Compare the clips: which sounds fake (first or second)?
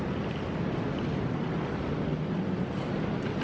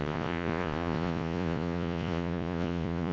second